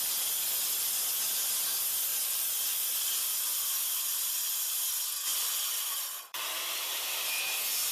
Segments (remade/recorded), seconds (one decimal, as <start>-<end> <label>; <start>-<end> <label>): 0.0-2.1 recorded; 2.1-3.1 remade; 3.1-3.5 recorded; 3.5-4.0 remade; 4.0-5.3 recorded; 5.3-7.2 remade; 7.2-7.9 recorded